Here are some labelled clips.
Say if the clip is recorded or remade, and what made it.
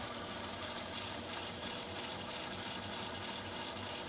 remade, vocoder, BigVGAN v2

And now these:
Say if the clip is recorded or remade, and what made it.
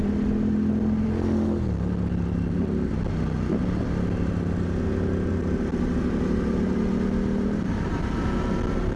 recorded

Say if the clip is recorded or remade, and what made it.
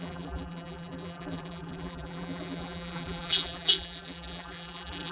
remade, vocoder, BigVGAN v2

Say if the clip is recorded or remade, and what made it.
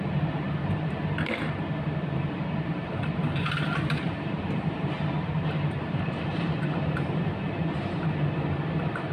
remade, vocoder, BigVGAN v2